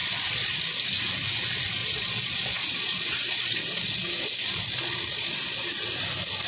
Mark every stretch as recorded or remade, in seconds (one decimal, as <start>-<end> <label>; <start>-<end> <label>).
0.0-0.6 remade; 0.6-1.8 recorded; 1.8-5.7 remade; 5.7-6.5 recorded